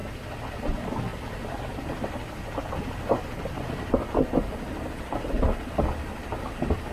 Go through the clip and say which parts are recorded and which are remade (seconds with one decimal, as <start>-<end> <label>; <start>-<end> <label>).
0.0-0.5 remade; 0.5-6.9 recorded